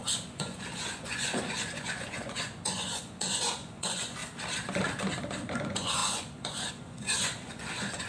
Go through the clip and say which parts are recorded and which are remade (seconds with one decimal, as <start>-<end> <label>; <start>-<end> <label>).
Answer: 0.0-4.2 remade; 4.2-5.5 recorded; 5.5-8.1 remade

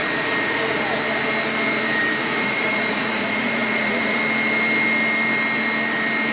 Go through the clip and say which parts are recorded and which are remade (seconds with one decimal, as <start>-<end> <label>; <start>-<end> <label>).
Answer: 0.0-0.8 remade; 0.8-2.2 recorded; 2.2-4.2 remade; 4.2-6.3 recorded

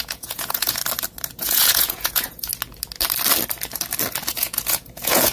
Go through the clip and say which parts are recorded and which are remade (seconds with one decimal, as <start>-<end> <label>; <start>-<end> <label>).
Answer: 0.0-0.8 remade; 0.8-1.4 recorded; 1.4-2.5 remade; 2.5-4.3 recorded; 4.3-5.3 remade

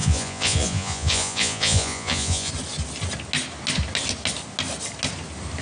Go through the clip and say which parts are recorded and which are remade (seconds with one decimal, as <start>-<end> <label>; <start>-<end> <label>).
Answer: 0.0-2.5 remade; 2.5-5.6 recorded

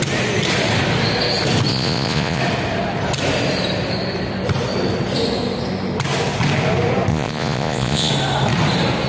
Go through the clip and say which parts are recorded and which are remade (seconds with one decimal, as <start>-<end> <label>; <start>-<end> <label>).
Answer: 0.0-1.7 recorded; 1.7-2.4 remade; 2.4-7.1 recorded; 7.1-8.1 remade; 8.1-9.1 recorded

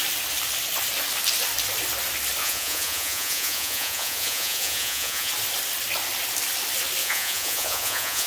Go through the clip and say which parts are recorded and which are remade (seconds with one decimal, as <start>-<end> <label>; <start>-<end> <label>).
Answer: 0.0-2.4 recorded; 2.4-5.3 remade; 5.3-7.0 recorded; 7.0-8.3 remade

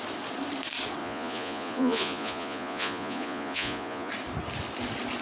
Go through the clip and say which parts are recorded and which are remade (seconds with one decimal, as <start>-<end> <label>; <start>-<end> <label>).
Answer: 0.0-1.0 recorded; 1.0-4.1 remade; 4.1-5.2 recorded

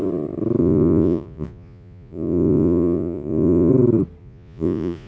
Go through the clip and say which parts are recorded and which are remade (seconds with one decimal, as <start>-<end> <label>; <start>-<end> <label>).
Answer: 0.0-0.6 recorded; 0.6-3.7 remade; 3.7-4.2 recorded; 4.2-5.1 remade